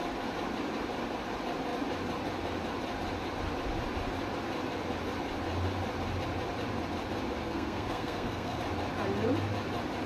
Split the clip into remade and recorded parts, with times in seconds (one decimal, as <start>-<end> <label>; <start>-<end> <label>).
0.0-7.4 recorded; 7.4-8.6 remade; 8.6-10.1 recorded